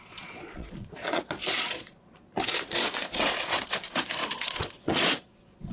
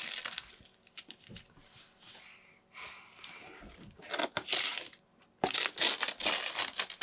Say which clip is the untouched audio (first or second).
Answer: second